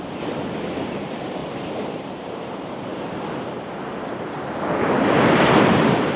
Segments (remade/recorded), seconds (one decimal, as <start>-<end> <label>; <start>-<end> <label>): 0.0-1.4 remade; 1.4-2.5 recorded; 2.5-2.9 remade; 2.9-5.2 recorded; 5.2-6.2 remade